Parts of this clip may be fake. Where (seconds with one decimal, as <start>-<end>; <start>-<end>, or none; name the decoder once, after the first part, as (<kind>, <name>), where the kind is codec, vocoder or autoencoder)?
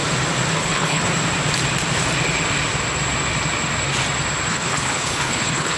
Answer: 0.6-1.0 (codec, HILCodec); 4.5-5.8